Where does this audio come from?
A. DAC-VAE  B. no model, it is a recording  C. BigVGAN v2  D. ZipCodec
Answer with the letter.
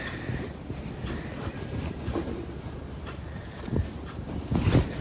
B